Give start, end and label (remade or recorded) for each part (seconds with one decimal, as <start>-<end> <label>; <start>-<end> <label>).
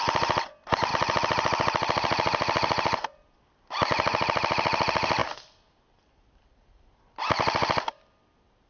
0.0-8.7 recorded